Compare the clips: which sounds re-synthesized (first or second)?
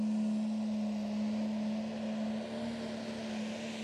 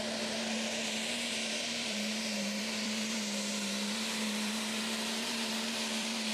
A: second